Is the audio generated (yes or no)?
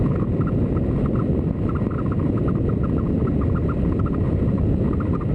no